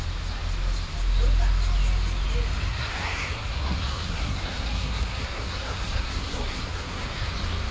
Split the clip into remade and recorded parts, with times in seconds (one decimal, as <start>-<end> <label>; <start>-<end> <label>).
0.0-2.7 recorded; 2.7-7.3 remade; 7.3-7.7 recorded